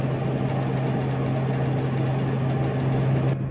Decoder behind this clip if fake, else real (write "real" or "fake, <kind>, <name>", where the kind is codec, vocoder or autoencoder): real